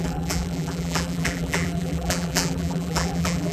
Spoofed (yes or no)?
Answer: yes